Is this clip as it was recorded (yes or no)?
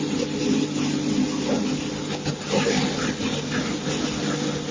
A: yes